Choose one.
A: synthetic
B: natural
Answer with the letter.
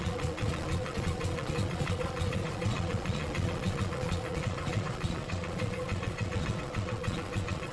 A